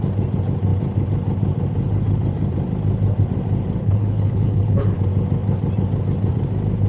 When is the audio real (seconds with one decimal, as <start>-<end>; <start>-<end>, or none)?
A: 0.0-3.8; 5.0-6.9